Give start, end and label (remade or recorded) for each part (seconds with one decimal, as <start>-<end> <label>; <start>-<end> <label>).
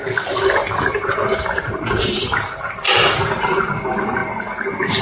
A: 0.0-0.6 recorded; 0.6-3.6 remade; 3.6-5.0 recorded